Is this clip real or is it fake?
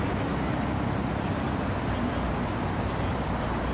real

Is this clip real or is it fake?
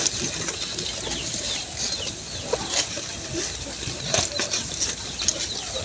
real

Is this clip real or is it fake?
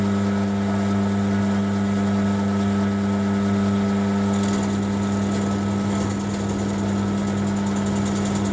real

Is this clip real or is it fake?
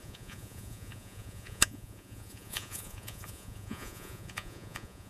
fake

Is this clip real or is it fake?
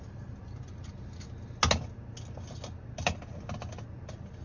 real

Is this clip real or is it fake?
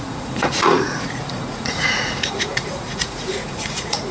fake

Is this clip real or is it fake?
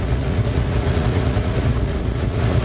fake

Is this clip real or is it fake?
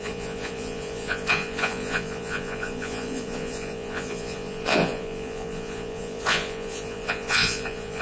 fake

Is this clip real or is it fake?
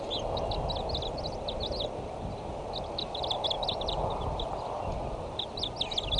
real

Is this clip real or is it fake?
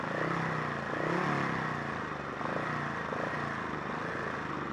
real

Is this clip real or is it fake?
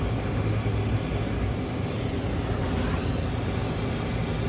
real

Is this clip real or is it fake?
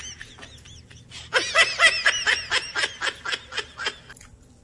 real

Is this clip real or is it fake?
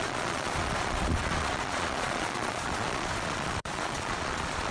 fake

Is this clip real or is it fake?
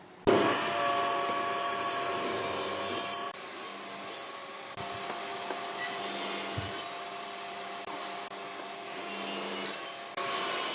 real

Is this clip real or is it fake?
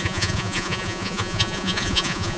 fake